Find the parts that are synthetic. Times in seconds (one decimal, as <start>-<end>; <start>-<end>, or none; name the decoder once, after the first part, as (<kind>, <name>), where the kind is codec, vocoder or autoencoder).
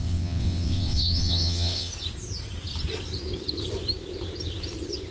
0.0-1.9 (vocoder, WaveNeXt)